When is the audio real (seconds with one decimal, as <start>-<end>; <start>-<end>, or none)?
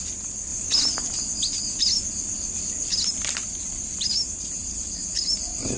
0.0-5.8